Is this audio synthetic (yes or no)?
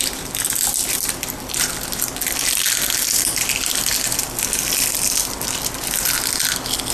no